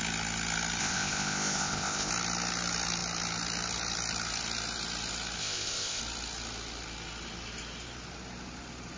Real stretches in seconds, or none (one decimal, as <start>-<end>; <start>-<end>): 0.0-0.8; 2.1-5.4; 6.0-9.0

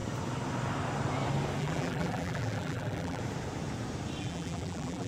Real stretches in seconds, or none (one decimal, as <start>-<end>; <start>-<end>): 0.0-1.6; 3.2-4.2

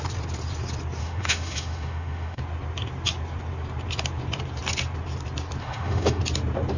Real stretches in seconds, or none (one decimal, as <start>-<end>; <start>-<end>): 0.0-1.0; 2.4-5.6; 6.2-6.8

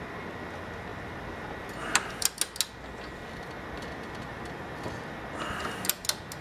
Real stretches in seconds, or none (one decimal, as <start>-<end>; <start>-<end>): 0.0-6.4

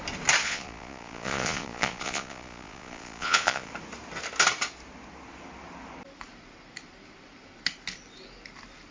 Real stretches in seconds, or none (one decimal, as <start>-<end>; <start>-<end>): 0.0-0.4; 3.7-8.9

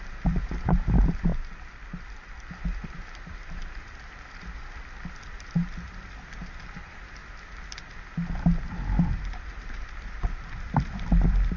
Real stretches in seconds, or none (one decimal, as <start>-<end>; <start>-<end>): 1.3-2.5; 7.2-9.5

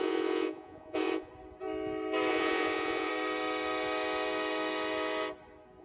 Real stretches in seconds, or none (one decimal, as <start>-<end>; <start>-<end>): 1.3-2.3; 3.1-5.8

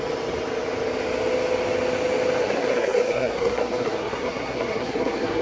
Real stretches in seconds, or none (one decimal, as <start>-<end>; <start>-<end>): 0.0-2.4